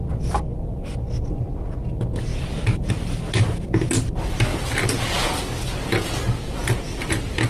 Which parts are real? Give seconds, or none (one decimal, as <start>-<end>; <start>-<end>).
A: 0.0-2.3; 2.9-7.5